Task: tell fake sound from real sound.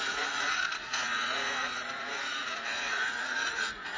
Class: fake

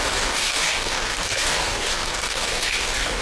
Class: fake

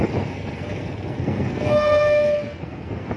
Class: fake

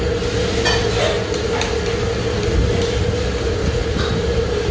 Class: real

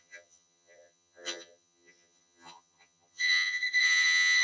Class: fake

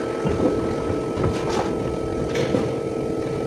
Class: real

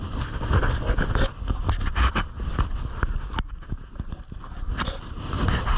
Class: real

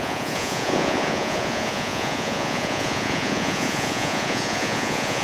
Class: fake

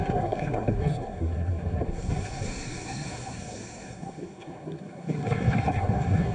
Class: fake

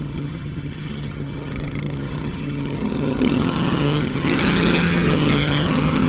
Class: fake